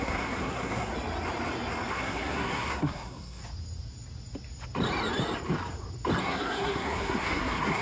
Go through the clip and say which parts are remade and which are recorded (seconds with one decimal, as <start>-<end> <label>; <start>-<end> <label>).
0.0-0.9 remade; 0.9-1.9 recorded; 1.9-3.4 remade; 3.4-6.2 recorded; 6.2-7.8 remade